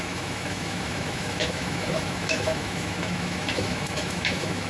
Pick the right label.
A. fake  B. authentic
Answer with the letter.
A